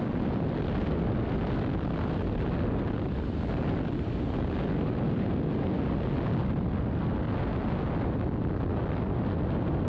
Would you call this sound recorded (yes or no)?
yes